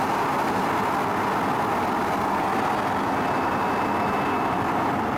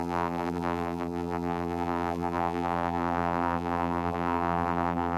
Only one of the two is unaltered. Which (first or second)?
first